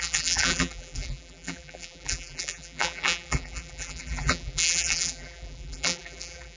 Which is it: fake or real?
fake